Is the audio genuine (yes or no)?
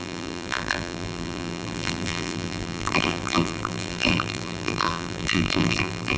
no